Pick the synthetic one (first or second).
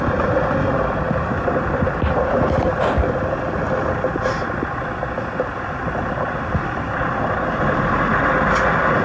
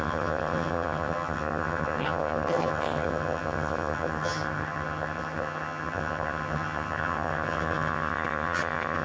second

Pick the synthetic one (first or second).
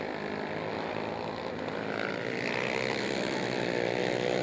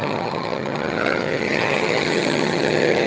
second